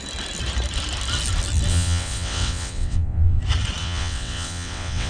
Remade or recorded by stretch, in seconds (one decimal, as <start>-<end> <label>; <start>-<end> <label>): 0.0-1.7 recorded; 1.7-3.4 remade; 3.4-3.8 recorded; 3.8-5.1 remade